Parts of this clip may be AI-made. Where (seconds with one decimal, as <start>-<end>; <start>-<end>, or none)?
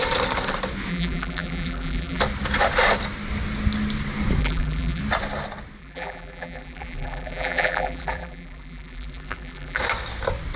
0.9-2.2; 4.4-5.0; 5.8-9.8